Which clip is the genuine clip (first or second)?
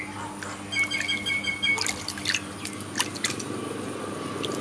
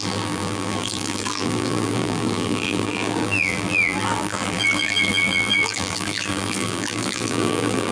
first